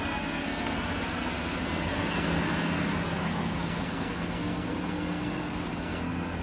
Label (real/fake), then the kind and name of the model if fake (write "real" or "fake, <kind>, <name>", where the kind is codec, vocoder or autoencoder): fake, codec, SNAC